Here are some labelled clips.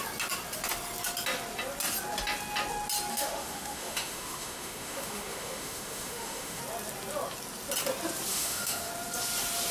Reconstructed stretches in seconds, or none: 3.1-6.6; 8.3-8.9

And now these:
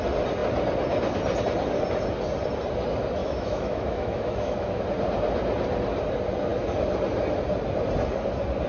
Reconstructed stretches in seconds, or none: 3.2-4.8

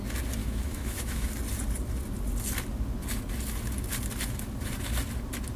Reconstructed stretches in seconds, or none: 0.4-1.3

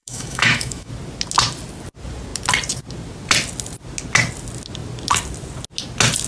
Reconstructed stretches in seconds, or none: 0.0-0.9

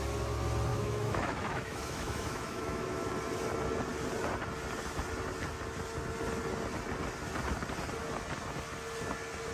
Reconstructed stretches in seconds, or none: 0.7-3.1

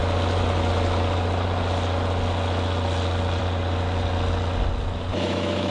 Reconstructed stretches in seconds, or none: 5.1-5.7